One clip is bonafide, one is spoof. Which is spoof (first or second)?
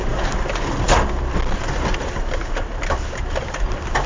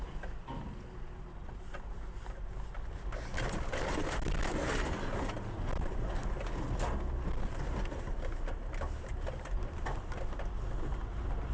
first